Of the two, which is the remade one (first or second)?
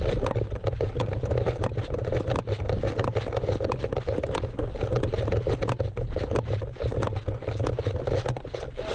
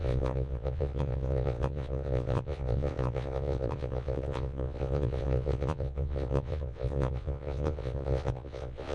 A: second